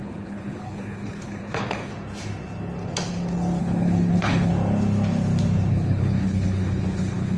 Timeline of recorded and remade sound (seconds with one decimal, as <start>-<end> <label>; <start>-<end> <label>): 0.0-1.9 remade; 1.9-3.6 recorded; 3.6-4.5 remade; 4.5-5.7 recorded; 5.7-7.4 remade